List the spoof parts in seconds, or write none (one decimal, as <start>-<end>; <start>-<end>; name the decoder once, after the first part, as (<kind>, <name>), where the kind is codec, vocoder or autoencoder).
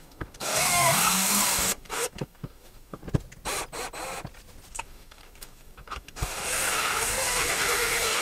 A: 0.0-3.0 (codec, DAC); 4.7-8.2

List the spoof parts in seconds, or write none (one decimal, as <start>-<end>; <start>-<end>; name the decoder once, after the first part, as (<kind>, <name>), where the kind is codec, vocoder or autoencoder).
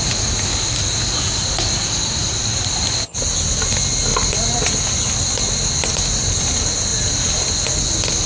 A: none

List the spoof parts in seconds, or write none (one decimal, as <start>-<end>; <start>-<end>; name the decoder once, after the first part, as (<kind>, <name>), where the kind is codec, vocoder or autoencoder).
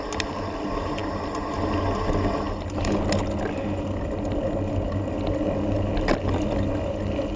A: none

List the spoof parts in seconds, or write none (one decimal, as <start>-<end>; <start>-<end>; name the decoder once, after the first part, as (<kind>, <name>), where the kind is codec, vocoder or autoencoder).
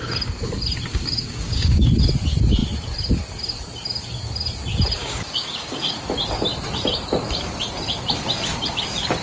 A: 0.9-1.9 (codec, DAC); 5.0-6.0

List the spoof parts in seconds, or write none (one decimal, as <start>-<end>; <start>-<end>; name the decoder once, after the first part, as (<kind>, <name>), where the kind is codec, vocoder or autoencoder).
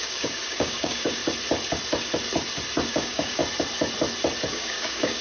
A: 0.0-1.2 (codec, DAC); 2.9-3.4; 4.5-5.2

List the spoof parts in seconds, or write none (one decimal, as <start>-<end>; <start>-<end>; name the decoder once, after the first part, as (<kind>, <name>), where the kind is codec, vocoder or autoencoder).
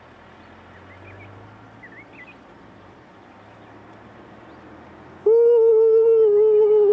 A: none